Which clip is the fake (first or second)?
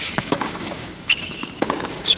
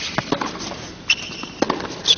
first